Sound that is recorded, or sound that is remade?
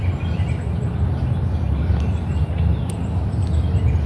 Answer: recorded